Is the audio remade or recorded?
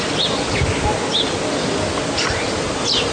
recorded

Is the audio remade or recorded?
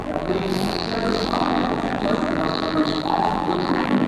remade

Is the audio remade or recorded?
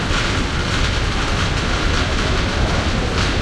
recorded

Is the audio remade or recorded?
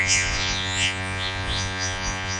remade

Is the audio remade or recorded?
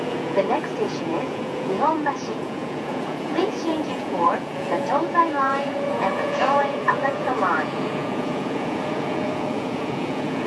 remade